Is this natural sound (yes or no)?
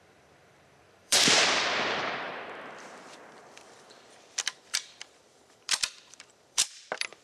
no